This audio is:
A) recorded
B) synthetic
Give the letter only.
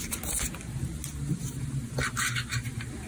A